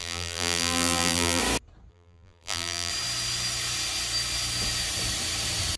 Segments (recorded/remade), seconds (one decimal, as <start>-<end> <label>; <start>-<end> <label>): 0.0-1.4 remade; 1.4-1.9 recorded; 1.9-2.9 remade; 2.9-5.8 recorded